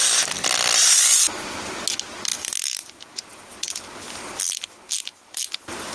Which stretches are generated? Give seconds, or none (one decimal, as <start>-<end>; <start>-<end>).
5.1-5.9